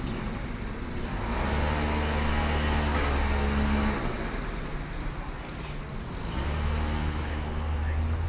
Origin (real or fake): real